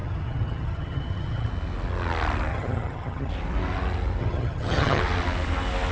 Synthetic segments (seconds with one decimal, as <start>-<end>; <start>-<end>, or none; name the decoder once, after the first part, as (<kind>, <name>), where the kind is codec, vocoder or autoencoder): 0.0-1.5 (vocoder, HiFi-GAN); 2.5-3.3; 4.2-5.0